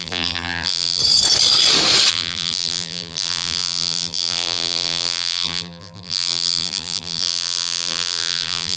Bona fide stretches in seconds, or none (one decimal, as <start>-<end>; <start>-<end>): 1.0-2.1